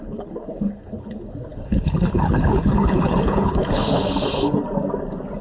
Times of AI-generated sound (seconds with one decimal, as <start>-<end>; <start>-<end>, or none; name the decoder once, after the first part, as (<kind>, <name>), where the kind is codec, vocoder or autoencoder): 0.0-4.6 (codec, HILCodec)